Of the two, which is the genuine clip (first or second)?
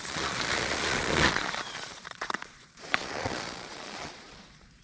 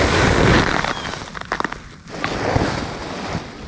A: second